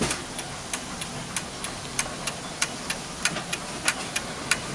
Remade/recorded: recorded